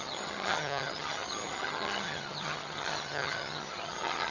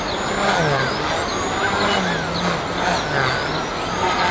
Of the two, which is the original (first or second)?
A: second